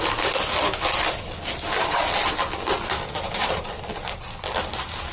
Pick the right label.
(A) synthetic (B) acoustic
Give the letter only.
B